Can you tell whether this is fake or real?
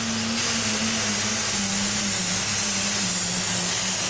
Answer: real